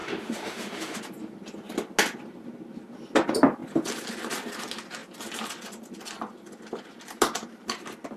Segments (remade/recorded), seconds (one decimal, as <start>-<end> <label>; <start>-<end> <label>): 0.0-1.0 remade; 1.0-8.2 recorded